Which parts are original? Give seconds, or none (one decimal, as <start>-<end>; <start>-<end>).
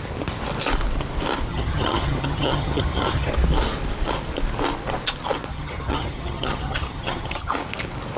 0.0-1.5; 3.3-5.5; 7.5-8.2